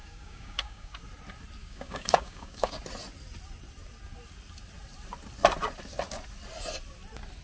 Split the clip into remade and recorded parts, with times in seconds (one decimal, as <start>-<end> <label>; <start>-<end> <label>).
0.0-1.0 remade; 1.0-1.6 recorded; 1.6-2.8 remade; 2.8-7.4 recorded